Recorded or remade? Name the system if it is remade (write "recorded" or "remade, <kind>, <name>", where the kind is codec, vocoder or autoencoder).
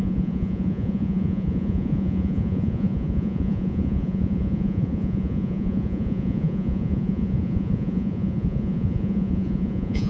remade, vocoder, Vocos